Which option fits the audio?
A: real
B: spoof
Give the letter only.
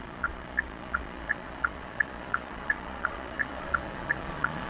B